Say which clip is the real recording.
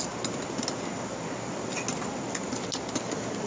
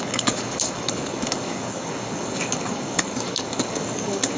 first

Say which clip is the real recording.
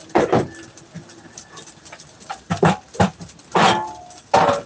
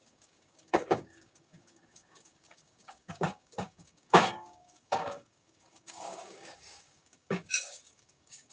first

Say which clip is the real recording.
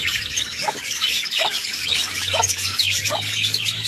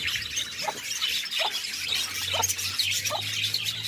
second